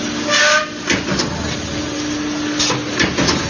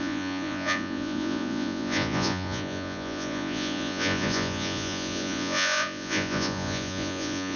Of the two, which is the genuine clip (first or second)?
first